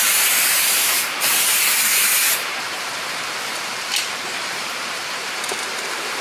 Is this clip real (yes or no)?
no